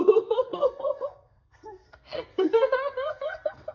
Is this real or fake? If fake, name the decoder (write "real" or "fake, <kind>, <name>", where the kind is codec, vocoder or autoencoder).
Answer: fake, codec, SNAC